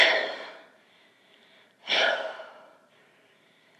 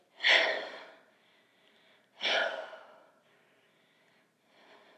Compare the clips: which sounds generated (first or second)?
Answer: first